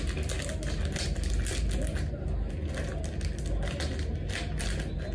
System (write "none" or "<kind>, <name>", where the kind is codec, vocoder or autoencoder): none